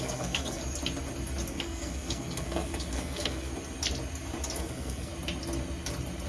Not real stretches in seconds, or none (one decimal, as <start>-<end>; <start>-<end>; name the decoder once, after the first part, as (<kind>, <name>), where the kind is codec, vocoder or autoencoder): 0.0-0.6 (codec, SNAC); 1.5-3.5; 4.6-5.1